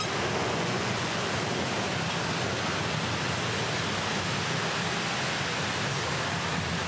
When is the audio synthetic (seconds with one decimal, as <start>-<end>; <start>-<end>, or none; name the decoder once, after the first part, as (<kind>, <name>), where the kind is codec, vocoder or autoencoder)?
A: 0.4-1.2 (vocoder, Vocos)